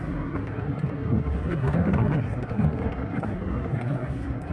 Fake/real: fake